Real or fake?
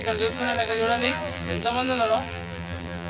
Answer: fake